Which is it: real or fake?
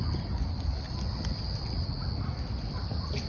real